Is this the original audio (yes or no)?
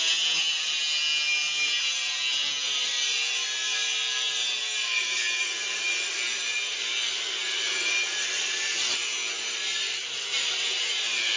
yes